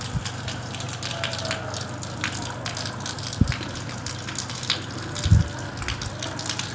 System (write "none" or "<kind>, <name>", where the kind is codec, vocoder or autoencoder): none